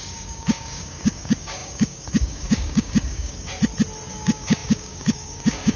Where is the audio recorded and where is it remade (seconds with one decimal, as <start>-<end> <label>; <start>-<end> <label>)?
0.0-3.5 remade; 3.5-4.1 recorded; 4.1-5.8 remade